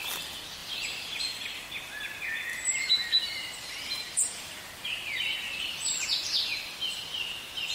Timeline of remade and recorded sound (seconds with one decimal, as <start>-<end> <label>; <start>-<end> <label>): 0.0-2.5 recorded; 2.5-5.6 remade; 5.6-7.7 recorded